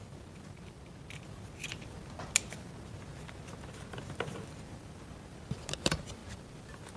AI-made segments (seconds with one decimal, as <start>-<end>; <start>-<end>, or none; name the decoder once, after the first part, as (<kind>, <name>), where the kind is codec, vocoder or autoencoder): none